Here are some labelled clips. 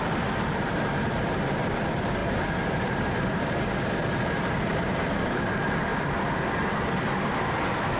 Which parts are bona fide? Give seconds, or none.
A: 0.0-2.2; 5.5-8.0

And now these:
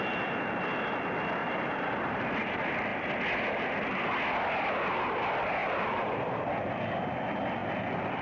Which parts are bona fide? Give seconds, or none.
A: 0.0-1.4; 2.2-5.6; 6.5-8.2

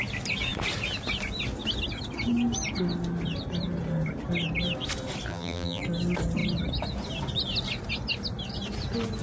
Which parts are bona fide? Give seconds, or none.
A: 0.0-5.3; 5.8-9.2